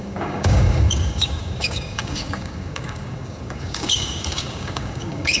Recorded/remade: remade